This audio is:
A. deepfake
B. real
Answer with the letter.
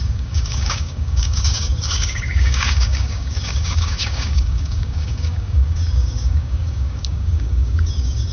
A